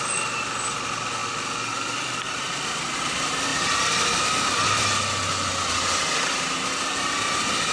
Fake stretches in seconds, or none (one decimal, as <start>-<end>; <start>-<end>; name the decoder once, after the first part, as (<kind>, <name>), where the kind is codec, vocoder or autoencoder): 1.2-3.0 (vocoder, BigVGAN v2); 3.5-4.8